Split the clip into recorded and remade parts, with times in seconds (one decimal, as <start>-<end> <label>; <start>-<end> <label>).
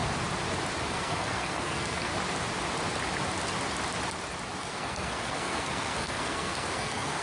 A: 0.0-0.9 recorded; 0.9-2.1 remade; 2.1-4.6 recorded; 4.6-7.2 remade